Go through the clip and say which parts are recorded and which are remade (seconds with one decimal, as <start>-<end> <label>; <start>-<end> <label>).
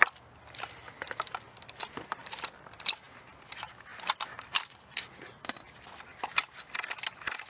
0.0-3.9 recorded; 3.9-5.0 remade; 5.0-6.4 recorded; 6.4-7.0 remade; 7.0-7.5 recorded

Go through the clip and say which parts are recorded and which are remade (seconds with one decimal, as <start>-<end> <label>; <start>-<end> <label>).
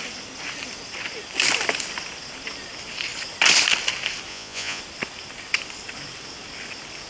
0.0-4.3 recorded; 4.3-4.8 remade; 4.8-7.1 recorded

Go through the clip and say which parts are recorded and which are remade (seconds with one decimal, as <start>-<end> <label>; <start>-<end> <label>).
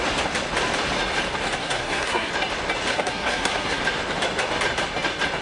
0.0-1.6 recorded; 1.6-2.3 remade; 2.3-2.9 recorded; 2.9-3.8 remade; 3.8-5.4 recorded